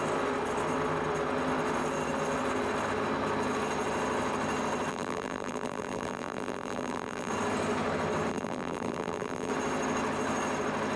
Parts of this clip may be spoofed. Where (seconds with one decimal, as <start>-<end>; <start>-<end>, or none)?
4.9-7.3; 8.3-9.5